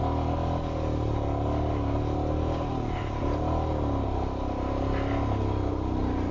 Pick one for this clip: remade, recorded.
recorded